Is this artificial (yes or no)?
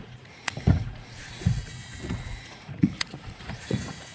yes